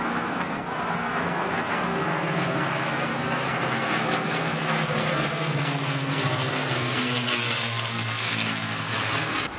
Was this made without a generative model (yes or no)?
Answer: no